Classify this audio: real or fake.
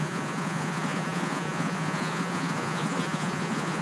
fake